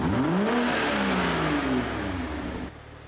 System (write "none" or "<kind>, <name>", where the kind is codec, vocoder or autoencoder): none